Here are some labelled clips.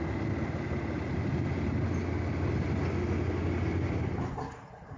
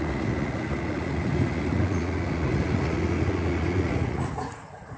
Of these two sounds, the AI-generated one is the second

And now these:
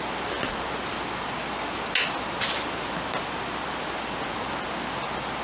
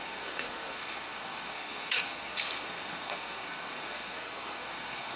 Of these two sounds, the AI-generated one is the second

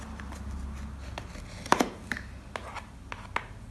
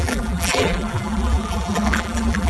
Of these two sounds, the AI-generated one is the second